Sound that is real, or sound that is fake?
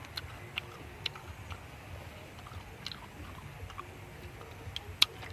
real